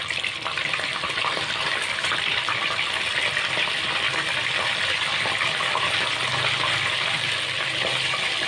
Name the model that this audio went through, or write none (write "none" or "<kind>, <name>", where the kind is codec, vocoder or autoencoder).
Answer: none